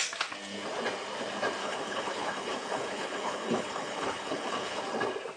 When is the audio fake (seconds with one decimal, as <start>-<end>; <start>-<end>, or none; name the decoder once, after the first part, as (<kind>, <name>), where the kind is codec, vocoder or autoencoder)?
1.6-4.8 (codec, HILCodec)